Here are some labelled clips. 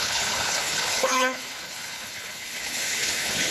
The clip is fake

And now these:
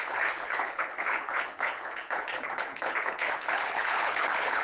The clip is fake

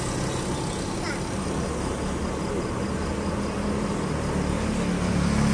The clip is real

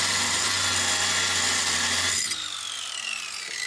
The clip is real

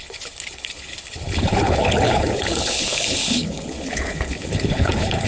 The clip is fake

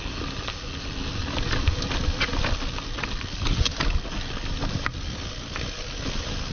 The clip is real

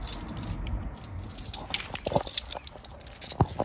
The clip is real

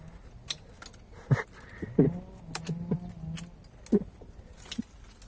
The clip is real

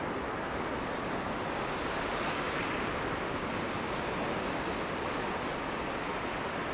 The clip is real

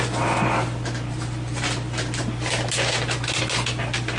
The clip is real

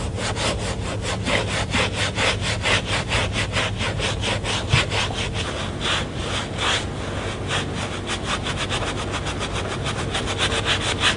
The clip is real